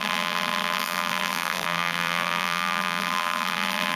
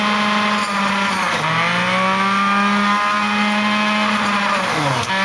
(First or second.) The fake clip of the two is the first